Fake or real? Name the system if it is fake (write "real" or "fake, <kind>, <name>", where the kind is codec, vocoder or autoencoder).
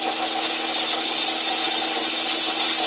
real